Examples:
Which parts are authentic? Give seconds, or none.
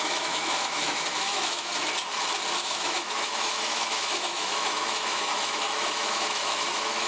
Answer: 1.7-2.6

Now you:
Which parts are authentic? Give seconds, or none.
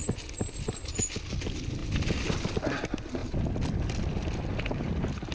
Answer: 0.0-5.3